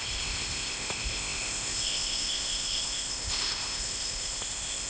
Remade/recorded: remade